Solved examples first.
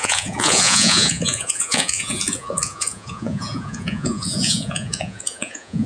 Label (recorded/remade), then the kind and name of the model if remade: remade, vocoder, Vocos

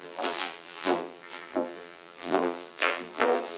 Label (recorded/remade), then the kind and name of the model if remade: remade, vocoder, BigVGAN v2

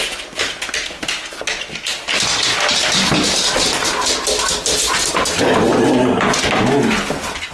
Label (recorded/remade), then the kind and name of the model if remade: recorded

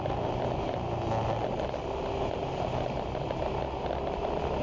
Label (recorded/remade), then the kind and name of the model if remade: recorded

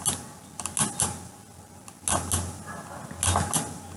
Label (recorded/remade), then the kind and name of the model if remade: recorded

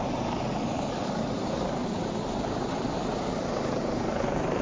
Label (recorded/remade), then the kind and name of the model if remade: remade, vocoder, BigVGAN v2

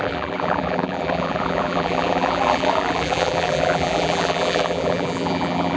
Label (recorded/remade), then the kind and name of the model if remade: remade, vocoder, BigVGAN v2